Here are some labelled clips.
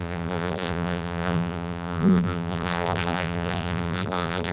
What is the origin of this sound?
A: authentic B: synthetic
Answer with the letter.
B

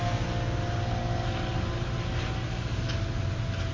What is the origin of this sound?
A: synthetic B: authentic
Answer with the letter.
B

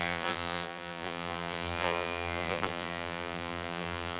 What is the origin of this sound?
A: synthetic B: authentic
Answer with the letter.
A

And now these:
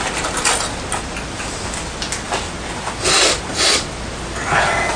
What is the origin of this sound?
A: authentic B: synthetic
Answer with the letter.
A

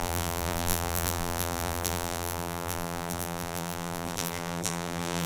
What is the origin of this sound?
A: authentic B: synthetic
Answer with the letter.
B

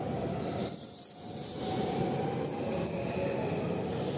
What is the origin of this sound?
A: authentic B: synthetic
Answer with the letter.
A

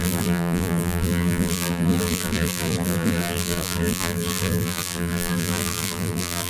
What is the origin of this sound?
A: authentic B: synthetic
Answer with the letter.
B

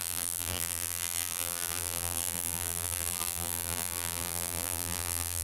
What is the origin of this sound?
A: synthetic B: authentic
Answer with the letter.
A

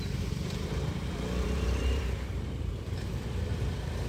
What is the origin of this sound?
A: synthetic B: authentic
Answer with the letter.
A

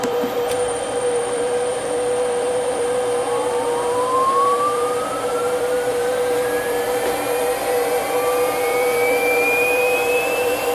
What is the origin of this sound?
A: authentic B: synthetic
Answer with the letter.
B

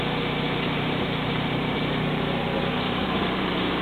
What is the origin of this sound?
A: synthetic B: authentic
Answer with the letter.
A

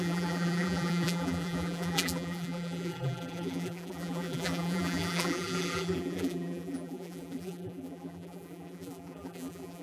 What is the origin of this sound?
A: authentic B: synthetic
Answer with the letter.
B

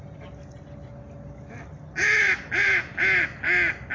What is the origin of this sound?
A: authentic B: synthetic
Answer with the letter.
A